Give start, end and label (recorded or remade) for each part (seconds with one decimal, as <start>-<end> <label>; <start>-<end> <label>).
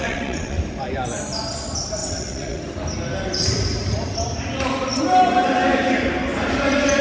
0.0-0.6 remade; 0.6-2.0 recorded; 2.0-2.6 remade; 2.6-7.0 recorded